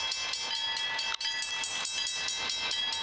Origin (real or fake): real